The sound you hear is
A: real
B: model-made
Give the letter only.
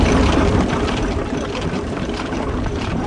B